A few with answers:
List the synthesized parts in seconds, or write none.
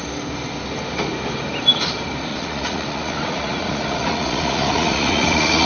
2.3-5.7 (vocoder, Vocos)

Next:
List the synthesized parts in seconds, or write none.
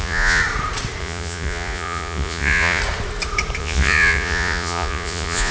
0.0-0.4 (vocoder, Vocos); 1.0-2.8; 3.6-5.5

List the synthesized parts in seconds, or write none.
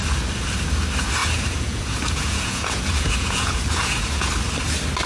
1.2-4.3 (vocoder, Vocos)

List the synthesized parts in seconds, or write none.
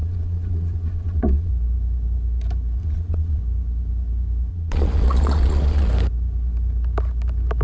0.0-1.5 (vocoder, Vocos); 2.8-3.4; 4.5-5.9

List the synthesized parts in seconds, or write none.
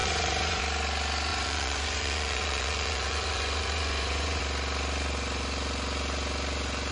0.0-0.6 (vocoder, Vocos); 1.3-4.4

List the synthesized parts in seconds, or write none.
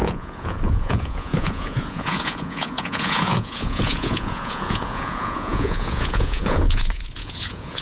0.0-7.8 (vocoder, Vocos)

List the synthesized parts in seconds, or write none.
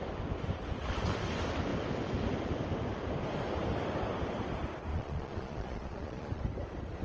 4.9-6.4 (vocoder, Vocos)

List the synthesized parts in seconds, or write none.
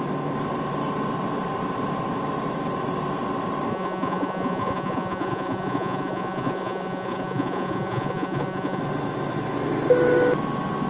3.7-8.8 (vocoder, Vocos)